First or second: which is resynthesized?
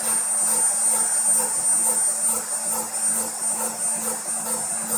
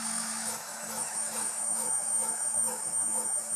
second